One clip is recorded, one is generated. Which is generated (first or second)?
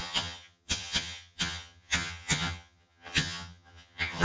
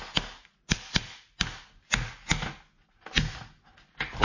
first